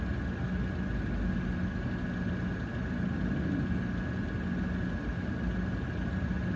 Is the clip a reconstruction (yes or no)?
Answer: no